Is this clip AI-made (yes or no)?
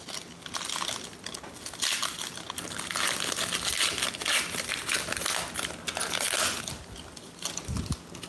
no